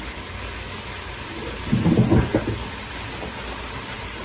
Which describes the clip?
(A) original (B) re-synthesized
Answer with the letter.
A